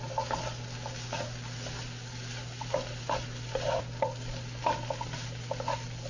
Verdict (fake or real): real